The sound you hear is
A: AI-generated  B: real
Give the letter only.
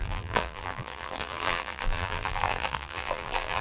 A